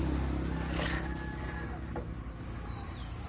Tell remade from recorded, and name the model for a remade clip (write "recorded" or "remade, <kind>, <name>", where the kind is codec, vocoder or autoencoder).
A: recorded